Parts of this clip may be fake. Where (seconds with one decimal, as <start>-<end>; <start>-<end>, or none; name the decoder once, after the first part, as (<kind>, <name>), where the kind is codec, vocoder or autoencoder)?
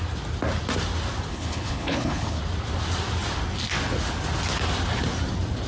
1.3-2.4 (codec, HILCodec)